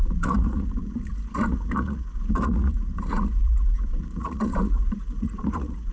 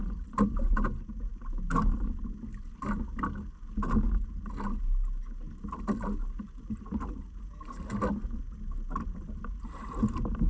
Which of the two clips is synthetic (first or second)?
first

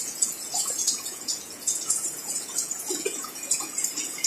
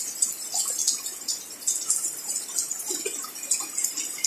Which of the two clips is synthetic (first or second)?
first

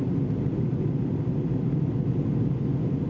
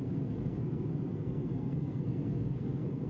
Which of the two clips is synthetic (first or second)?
second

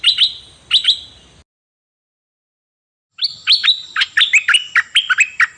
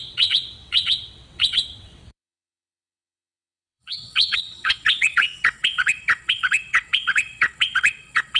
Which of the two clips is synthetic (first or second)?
second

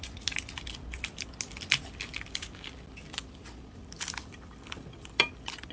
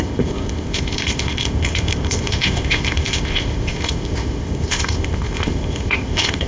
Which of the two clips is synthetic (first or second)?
second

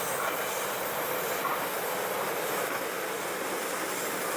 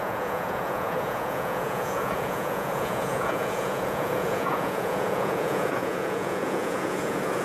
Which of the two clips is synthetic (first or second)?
second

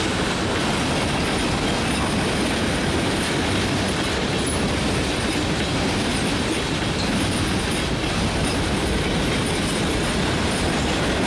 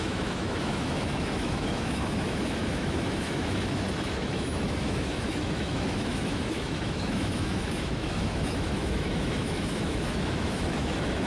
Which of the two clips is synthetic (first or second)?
second